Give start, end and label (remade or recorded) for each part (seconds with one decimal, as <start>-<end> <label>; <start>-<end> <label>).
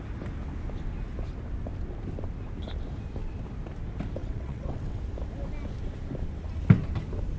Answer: 0.0-4.2 recorded; 4.2-5.0 remade; 5.0-7.4 recorded